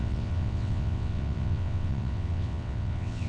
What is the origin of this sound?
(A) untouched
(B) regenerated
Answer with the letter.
B